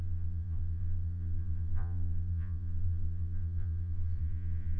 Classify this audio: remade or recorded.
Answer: remade